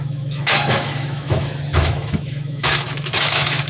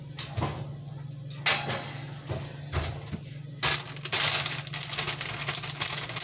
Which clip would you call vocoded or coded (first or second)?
first